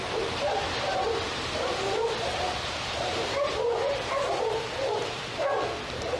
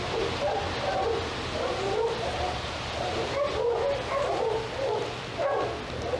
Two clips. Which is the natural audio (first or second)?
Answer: second